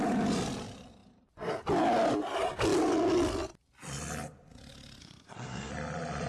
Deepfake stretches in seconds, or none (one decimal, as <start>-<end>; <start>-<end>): 5.0-5.7